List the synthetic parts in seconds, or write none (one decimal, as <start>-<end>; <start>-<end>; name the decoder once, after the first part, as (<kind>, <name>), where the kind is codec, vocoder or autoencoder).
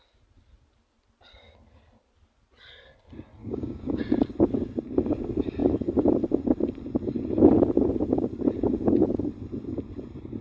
3.4-4.0 (codec, DAC)